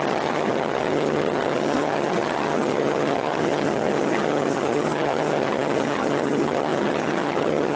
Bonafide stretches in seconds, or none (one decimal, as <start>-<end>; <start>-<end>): none